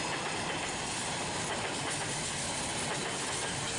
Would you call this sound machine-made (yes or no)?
no